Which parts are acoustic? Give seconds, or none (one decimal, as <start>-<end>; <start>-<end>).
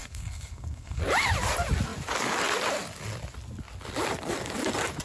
1.0-5.0